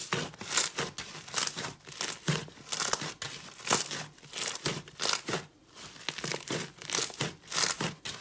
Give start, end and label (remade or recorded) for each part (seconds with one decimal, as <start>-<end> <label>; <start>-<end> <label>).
0.0-8.2 recorded